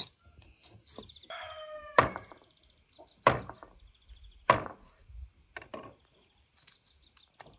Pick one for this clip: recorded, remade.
recorded